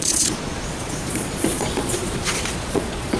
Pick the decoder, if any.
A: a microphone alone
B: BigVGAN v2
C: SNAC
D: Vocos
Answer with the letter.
D